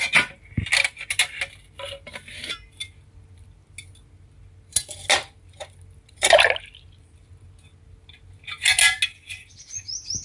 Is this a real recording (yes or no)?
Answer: yes